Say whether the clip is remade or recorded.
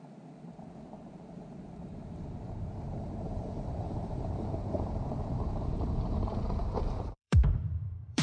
remade